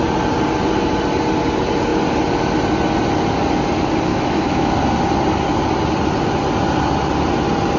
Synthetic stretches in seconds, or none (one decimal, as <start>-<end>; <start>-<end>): 4.1-4.7